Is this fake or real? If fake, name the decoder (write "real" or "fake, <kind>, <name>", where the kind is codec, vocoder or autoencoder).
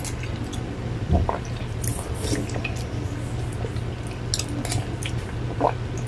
real